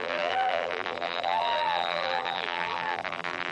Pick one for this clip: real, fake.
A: fake